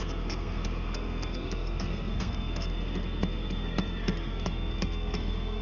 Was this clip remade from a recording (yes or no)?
yes